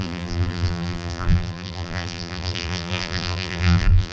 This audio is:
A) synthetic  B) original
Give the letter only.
A